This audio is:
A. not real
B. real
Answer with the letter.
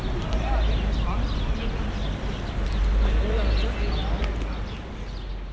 B